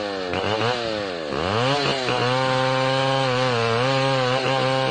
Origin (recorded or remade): recorded